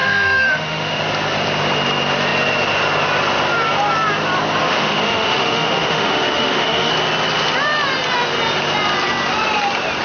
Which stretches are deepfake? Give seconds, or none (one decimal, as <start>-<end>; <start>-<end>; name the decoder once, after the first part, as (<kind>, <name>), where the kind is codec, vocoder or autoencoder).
0.0-1.0 (autoencoder, DAC-VAE); 4.6-6.9